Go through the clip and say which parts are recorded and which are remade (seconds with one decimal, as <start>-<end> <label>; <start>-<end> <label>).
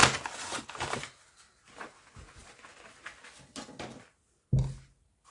0.0-5.3 recorded